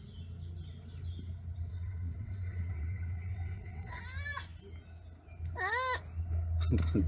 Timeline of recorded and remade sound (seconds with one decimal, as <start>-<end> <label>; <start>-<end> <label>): 0.0-1.7 recorded; 1.7-4.0 remade; 4.0-7.1 recorded